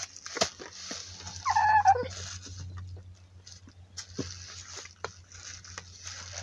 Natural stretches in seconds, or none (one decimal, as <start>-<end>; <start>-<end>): 0.0-6.4